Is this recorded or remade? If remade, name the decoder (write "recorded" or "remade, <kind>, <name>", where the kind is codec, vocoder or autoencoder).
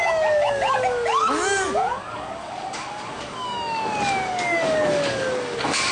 remade, codec, DAC